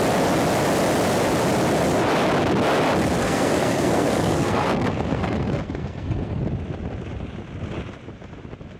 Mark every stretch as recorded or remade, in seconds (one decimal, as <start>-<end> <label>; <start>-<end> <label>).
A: 0.0-3.2 recorded; 3.2-6.4 remade; 6.4-8.8 recorded

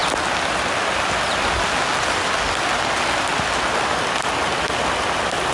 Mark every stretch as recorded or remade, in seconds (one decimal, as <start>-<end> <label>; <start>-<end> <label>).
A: 0.0-5.5 recorded

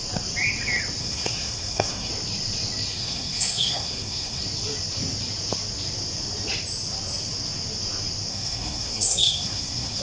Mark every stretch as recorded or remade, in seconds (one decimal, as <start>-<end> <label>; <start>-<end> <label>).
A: 0.0-1.0 recorded; 1.0-2.1 remade; 2.1-2.9 recorded; 2.9-4.4 remade; 4.4-8.3 recorded; 8.3-10.0 remade

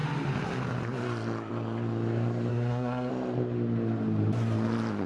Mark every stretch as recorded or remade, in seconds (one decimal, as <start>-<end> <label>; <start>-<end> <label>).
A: 0.0-2.5 recorded; 2.5-3.1 remade; 3.1-5.1 recorded

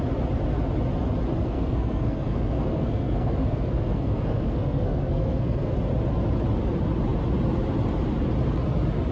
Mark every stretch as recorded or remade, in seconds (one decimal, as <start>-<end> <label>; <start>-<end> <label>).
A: 0.0-1.4 recorded; 1.4-5.7 remade; 5.7-9.1 recorded

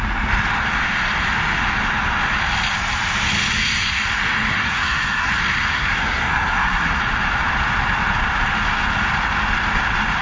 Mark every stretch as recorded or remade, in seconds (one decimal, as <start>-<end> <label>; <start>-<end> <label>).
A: 0.0-4.5 recorded; 4.5-5.3 remade; 5.3-5.7 recorded; 5.7-7.0 remade; 7.0-10.2 recorded

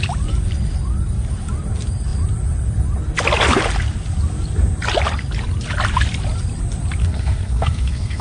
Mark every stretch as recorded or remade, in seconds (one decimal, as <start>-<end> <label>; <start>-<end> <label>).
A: 0.0-7.0 recorded; 7.0-8.2 remade

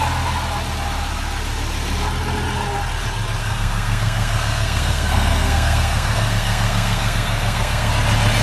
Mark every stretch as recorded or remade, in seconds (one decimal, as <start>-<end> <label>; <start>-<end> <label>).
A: 0.0-3.4 recorded; 3.4-7.9 remade; 7.9-8.4 recorded